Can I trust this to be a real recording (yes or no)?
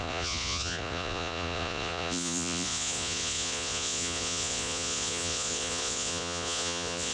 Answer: no